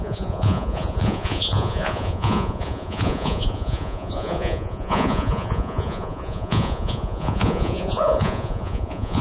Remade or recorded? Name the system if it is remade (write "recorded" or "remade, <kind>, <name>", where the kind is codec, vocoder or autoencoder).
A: remade, vocoder, Vocos